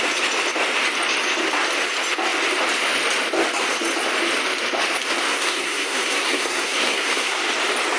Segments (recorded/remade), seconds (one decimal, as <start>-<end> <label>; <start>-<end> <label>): 0.0-5.3 recorded; 5.3-7.4 remade; 7.4-8.0 recorded